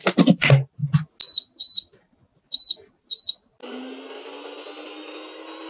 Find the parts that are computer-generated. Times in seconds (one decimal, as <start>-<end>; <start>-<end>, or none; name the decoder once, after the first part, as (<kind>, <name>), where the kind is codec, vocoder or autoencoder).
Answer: none